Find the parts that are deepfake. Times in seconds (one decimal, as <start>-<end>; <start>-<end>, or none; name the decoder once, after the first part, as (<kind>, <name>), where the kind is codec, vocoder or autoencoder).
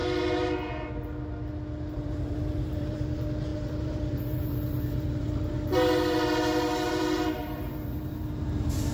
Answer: 1.9-8.9 (vocoder, BigVGAN v2)